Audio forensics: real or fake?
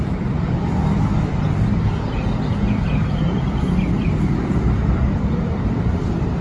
fake